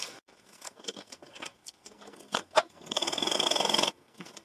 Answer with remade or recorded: remade